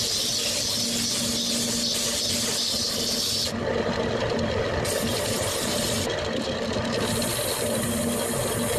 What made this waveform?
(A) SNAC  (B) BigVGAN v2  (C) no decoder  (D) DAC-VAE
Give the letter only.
C